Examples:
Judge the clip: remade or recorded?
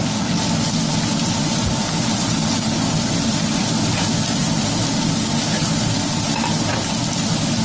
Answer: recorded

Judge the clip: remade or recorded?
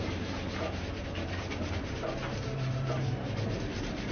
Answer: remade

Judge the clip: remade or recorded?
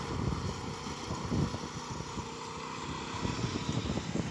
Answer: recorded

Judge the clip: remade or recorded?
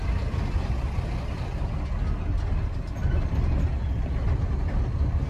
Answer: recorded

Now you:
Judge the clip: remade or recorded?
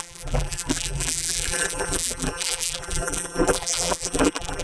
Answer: remade